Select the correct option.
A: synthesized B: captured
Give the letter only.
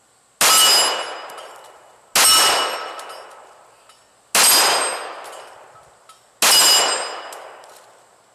B